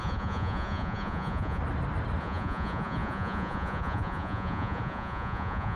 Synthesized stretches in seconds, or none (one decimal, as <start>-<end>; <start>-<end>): 0.0-1.6; 2.2-5.8